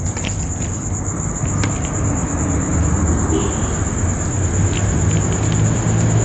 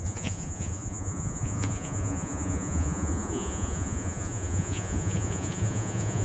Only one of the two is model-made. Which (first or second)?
second